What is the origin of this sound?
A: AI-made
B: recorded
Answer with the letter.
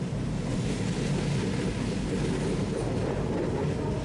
B